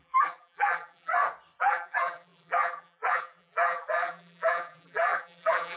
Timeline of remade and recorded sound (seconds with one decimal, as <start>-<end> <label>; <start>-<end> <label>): 0.0-1.1 remade; 1.1-1.6 recorded; 1.6-5.8 remade